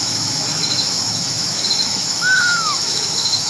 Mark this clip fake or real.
fake